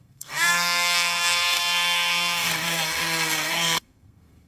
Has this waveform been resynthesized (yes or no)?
yes